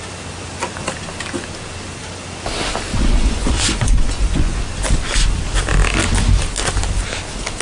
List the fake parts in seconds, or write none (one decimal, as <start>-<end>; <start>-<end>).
2.9-4.6